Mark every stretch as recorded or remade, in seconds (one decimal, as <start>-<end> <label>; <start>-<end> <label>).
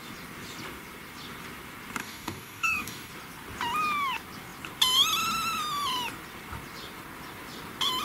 0.0-2.0 recorded; 2.0-3.1 remade; 3.1-8.0 recorded